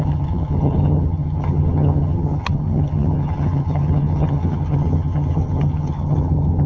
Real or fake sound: fake